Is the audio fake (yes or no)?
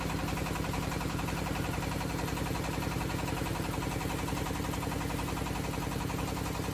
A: no